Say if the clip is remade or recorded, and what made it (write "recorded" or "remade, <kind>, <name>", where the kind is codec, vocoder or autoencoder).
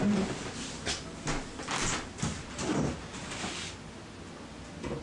recorded